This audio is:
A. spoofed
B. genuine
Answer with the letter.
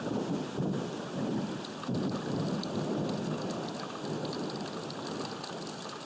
B